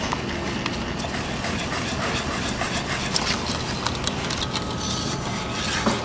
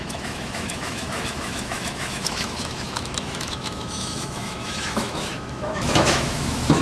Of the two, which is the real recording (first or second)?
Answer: first